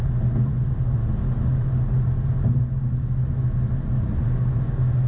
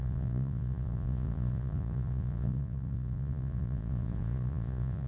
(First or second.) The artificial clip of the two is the second